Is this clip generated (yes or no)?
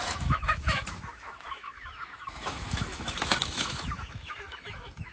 yes